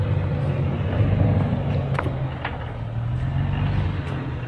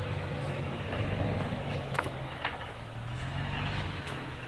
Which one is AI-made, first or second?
second